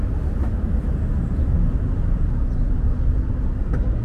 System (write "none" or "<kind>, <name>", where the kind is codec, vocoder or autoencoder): none